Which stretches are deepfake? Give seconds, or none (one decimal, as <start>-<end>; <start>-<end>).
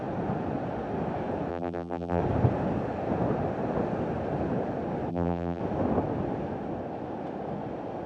1.5-2.2; 5.1-5.6